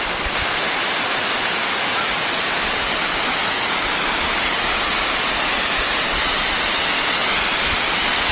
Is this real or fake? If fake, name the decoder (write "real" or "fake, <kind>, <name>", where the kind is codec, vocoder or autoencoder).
real